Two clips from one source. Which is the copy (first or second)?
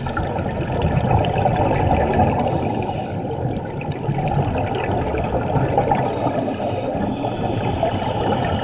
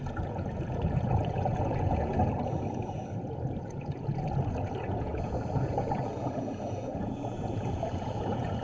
second